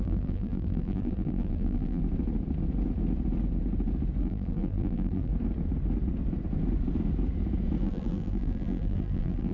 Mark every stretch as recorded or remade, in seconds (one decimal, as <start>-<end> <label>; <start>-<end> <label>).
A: 0.0-2.0 remade; 2.0-4.2 recorded; 4.2-5.3 remade; 5.3-7.8 recorded; 7.8-9.5 remade